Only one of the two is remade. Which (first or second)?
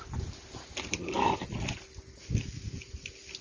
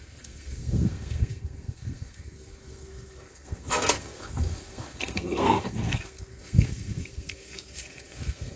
second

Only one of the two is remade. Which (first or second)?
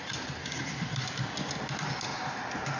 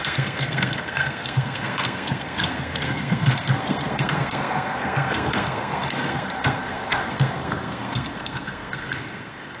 second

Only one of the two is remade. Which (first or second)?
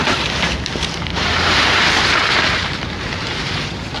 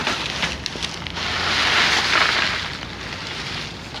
first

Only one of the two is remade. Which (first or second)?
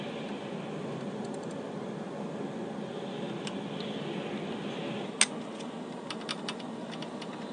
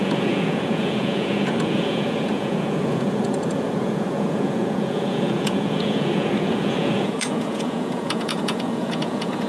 second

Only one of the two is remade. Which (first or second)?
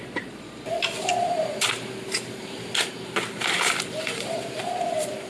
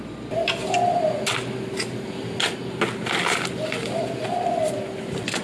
first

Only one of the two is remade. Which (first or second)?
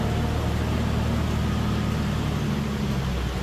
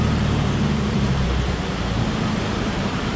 second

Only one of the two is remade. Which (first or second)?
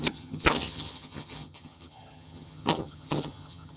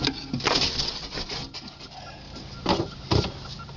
first